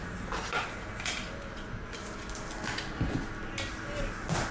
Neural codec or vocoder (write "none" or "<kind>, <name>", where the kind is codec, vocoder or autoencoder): none